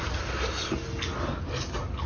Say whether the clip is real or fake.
real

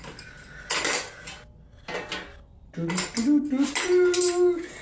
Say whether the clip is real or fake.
real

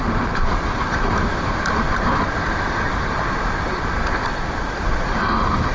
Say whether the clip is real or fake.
real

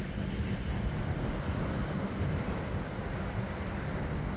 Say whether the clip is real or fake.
real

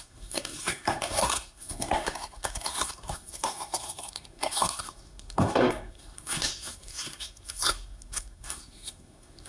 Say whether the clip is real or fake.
fake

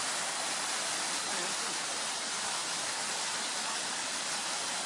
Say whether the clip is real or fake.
real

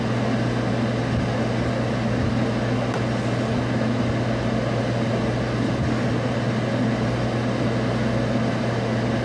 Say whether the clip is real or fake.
real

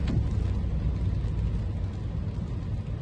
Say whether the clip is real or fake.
real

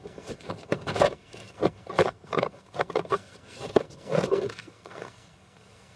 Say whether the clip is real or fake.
fake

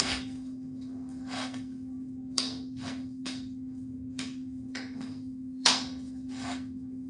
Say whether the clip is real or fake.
fake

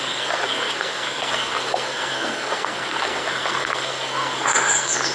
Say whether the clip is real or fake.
fake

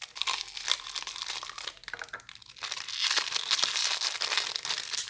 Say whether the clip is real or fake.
real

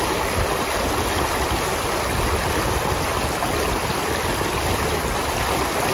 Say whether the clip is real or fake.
real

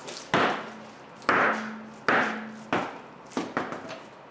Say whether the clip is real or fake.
real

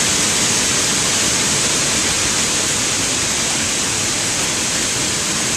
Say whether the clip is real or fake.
real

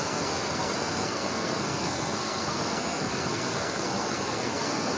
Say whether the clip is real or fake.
fake